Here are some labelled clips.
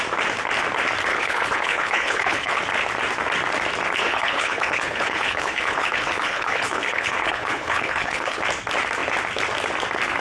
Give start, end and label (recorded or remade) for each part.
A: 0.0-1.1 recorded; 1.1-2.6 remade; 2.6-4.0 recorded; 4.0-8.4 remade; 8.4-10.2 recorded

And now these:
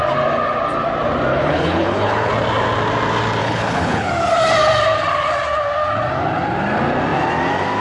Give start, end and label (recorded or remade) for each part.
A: 0.0-1.3 recorded; 1.3-2.3 remade; 2.3-3.4 recorded; 3.4-4.1 remade; 4.1-7.8 recorded